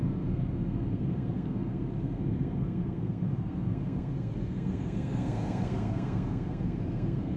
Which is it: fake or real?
fake